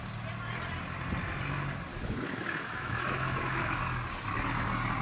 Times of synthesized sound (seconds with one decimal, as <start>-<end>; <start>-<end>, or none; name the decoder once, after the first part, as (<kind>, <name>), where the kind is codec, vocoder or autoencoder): 1.9-3.8 (autoencoder, DAC-VAE)